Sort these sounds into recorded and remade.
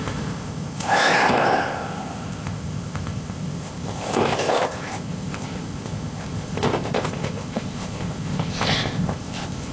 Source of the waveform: remade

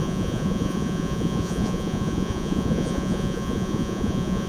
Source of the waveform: remade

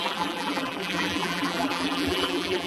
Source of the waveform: remade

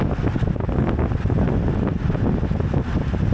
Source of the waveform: recorded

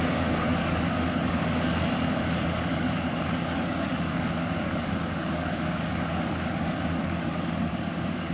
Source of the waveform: remade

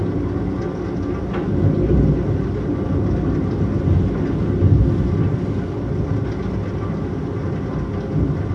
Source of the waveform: recorded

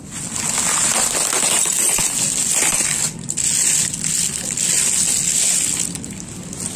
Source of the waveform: recorded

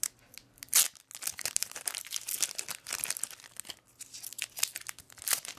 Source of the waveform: recorded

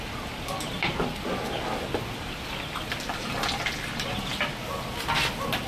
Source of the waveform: recorded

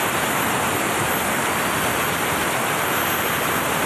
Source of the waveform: recorded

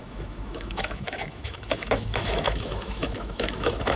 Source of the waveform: remade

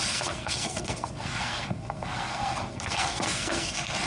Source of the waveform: remade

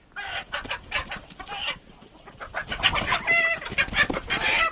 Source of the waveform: recorded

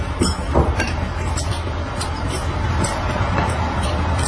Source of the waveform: recorded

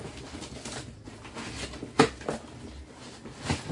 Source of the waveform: recorded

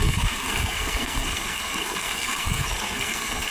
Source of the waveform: remade